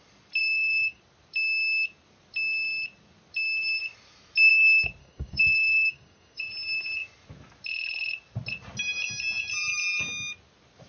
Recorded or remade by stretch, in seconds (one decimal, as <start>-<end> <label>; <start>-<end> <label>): 0.0-0.4 recorded; 0.4-1.0 remade; 1.0-5.0 recorded; 5.0-6.5 remade; 6.5-10.9 recorded

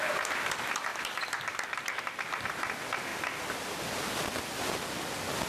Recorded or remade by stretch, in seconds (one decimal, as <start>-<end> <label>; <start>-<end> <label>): 0.0-5.5 recorded